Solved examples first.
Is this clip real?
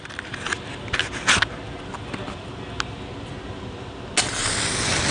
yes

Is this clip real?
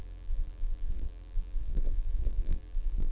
no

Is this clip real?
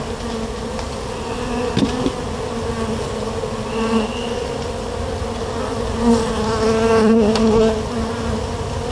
yes